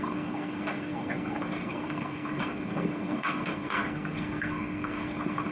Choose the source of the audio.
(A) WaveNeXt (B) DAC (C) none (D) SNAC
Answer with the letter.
D